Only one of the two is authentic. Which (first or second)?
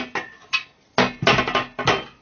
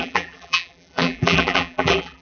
first